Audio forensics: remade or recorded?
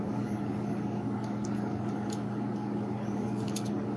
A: remade